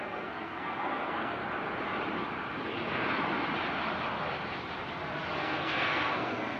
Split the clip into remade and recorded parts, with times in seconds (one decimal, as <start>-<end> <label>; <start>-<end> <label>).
0.0-1.4 remade; 1.4-5.4 recorded; 5.4-6.6 remade